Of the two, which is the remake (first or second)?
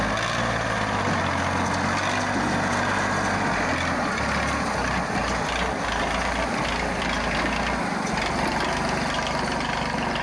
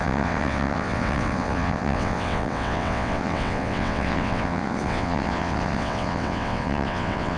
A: second